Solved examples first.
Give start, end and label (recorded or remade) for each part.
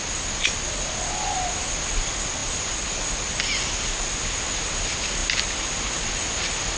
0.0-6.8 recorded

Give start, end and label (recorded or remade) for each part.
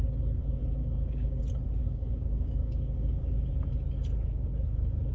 0.0-0.8 recorded; 0.8-1.4 remade; 1.4-1.8 recorded; 1.8-3.5 remade; 3.5-4.3 recorded; 4.3-5.1 remade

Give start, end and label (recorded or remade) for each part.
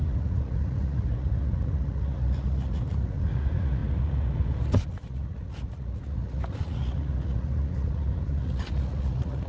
0.0-9.5 remade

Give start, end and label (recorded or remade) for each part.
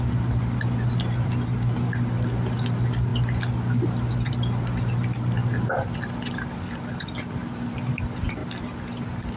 0.0-3.1 remade; 3.1-4.3 recorded; 4.3-5.4 remade; 5.4-6.0 recorded; 6.0-7.4 remade; 7.4-8.0 recorded; 8.0-8.4 remade; 8.4-9.4 recorded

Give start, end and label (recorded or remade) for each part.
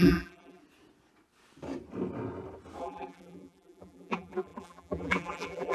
0.0-0.6 remade; 0.6-2.8 recorded; 2.8-5.7 remade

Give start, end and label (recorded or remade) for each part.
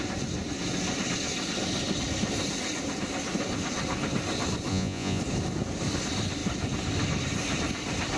0.0-4.7 recorded; 4.7-5.2 remade; 5.2-8.2 recorded